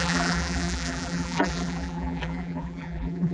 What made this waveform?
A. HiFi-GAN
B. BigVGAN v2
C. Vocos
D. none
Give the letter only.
B